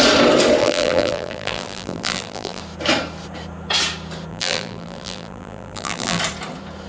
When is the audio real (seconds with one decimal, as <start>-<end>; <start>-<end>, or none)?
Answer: 0.0-0.6; 2.6-4.3; 6.2-6.9